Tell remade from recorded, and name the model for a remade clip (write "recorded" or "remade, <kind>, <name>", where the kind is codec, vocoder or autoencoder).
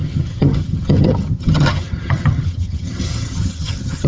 remade, vocoder, HiFi-GAN